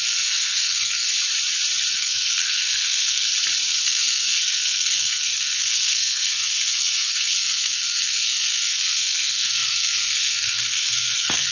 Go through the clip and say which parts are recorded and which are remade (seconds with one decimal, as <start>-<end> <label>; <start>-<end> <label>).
0.0-1.1 remade; 1.1-1.9 recorded; 1.9-3.3 remade; 3.3-3.8 recorded; 3.8-11.5 remade